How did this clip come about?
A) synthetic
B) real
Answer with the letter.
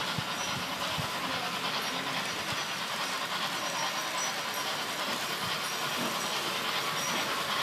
B